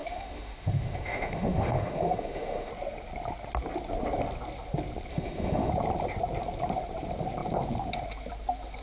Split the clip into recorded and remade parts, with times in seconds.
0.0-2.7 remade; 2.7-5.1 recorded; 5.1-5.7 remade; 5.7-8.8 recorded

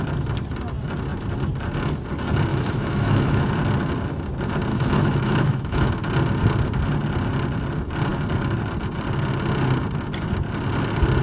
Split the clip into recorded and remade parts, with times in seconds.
0.0-2.5 recorded; 2.5-3.5 remade; 3.5-4.7 recorded; 4.7-5.9 remade; 5.9-11.2 recorded

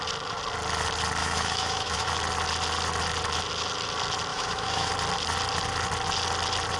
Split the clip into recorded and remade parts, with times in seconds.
0.0-1.2 recorded; 1.2-2.1 remade; 2.1-4.3 recorded; 4.3-4.9 remade; 4.9-6.8 recorded